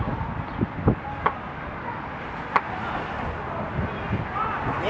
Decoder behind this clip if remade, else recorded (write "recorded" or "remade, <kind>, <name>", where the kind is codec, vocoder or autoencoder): recorded